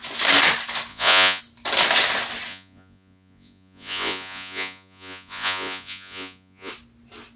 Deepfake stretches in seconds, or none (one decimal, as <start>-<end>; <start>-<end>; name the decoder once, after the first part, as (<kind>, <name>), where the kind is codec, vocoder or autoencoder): 0.9-1.4 (vocoder, Vocos); 2.5-6.7